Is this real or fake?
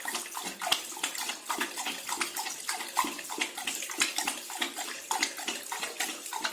real